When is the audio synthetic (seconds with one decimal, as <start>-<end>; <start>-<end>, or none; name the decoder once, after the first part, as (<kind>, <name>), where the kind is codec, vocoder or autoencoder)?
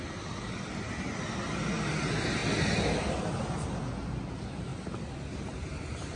none